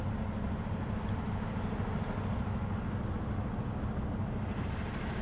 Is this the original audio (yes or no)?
yes